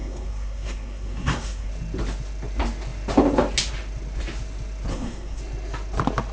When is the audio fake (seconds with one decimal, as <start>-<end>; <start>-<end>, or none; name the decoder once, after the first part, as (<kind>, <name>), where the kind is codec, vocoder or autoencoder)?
0.0-1.7 (codec, SNAC); 4.9-5.4